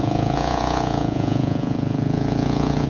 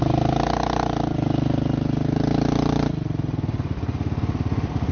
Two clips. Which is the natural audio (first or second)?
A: second